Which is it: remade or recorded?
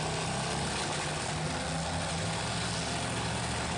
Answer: recorded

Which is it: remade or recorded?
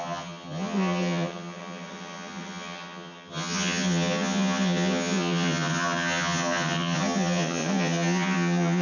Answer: remade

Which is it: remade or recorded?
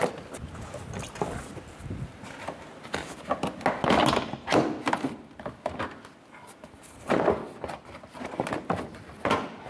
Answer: recorded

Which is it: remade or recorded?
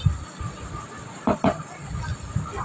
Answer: recorded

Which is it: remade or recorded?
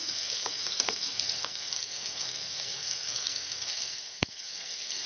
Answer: remade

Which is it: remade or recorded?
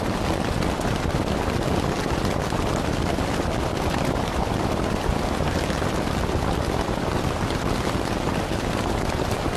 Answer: recorded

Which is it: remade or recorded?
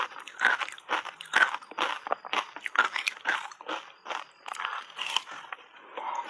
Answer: recorded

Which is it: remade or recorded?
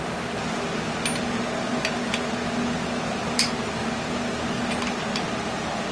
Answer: recorded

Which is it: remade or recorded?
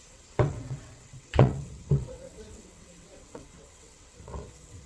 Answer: remade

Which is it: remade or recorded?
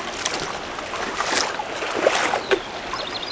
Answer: recorded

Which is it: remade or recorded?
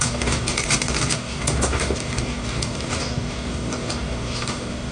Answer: remade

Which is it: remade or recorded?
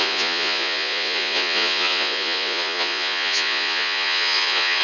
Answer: remade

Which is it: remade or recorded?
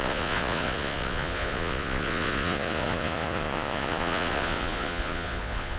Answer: remade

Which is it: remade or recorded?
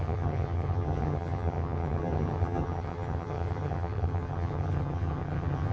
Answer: remade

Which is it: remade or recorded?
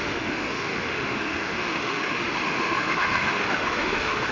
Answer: remade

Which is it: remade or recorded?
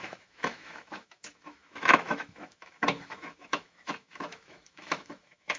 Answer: remade